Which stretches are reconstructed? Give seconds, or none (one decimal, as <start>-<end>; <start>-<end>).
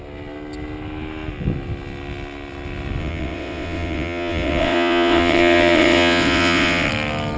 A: 3.0-6.9